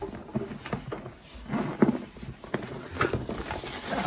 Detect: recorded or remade recorded